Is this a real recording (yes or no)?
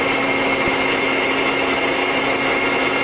yes